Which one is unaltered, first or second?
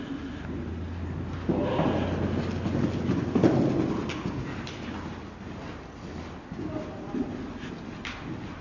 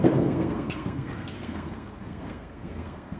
first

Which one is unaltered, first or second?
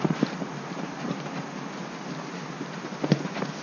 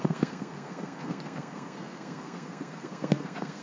first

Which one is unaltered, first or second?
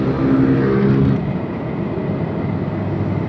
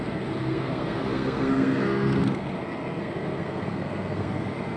first